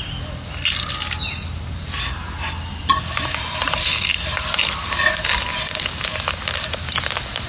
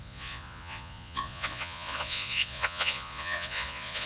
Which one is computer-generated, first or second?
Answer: second